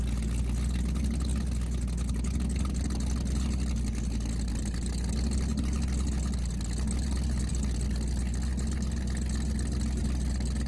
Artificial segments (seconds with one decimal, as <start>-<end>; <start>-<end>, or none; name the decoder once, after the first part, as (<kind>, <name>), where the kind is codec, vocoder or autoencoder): none